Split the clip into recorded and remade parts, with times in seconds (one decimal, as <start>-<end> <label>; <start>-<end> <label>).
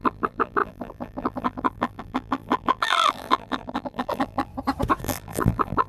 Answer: 0.0-4.5 remade; 4.5-5.0 recorded; 5.0-5.9 remade